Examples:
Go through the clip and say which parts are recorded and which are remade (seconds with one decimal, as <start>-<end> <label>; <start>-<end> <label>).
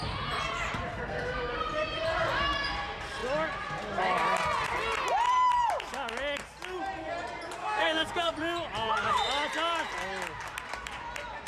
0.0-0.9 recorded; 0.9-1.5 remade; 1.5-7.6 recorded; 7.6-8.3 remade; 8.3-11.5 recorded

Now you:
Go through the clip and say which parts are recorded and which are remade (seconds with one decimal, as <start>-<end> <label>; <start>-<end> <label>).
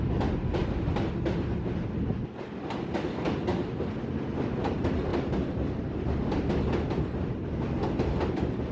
0.0-5.1 recorded; 5.1-5.9 remade; 5.9-8.7 recorded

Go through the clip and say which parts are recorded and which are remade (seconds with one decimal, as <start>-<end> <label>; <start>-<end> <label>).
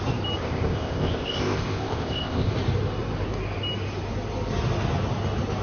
0.0-0.4 recorded; 0.4-2.5 remade; 2.5-5.6 recorded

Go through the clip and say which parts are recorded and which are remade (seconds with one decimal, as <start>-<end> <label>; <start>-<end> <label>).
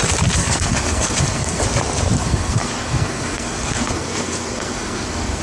0.0-0.4 recorded; 0.4-1.6 remade; 1.6-2.2 recorded; 2.2-5.4 remade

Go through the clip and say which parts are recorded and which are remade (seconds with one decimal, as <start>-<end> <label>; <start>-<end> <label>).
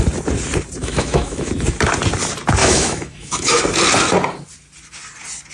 0.0-0.8 recorded; 0.8-1.5 remade; 1.5-2.6 recorded; 2.6-3.6 remade; 3.6-5.5 recorded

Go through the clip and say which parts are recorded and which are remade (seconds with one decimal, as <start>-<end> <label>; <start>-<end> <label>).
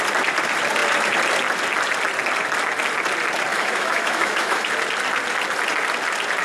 0.0-3.5 recorded; 3.5-4.7 remade; 4.7-6.4 recorded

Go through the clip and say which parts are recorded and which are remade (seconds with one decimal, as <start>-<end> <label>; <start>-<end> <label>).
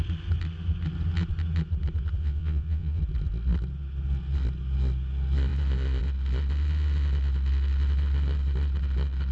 0.0-2.2 recorded; 2.2-3.0 remade; 3.0-9.3 recorded